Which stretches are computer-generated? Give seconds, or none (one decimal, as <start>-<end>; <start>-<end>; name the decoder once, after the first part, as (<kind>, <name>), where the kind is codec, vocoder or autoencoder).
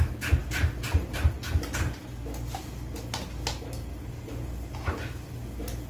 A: none